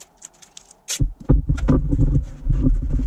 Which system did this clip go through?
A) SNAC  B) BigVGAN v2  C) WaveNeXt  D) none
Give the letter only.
D